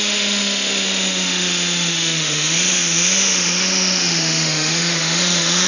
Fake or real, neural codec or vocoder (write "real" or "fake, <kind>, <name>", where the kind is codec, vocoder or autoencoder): fake, autoencoder, DAC-VAE